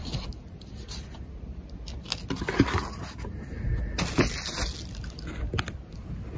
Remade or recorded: recorded